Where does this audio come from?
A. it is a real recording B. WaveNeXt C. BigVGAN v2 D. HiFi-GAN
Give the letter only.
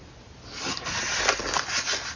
A